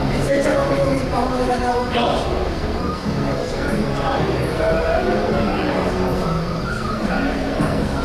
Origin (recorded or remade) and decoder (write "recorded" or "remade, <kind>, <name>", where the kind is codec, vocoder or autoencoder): remade, codec, SNAC